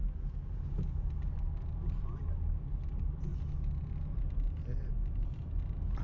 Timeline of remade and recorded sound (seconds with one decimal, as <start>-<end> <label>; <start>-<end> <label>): 0.0-6.0 recorded